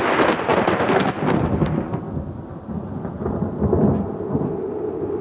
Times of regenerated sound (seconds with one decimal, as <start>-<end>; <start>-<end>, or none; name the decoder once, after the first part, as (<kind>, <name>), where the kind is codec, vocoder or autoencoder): none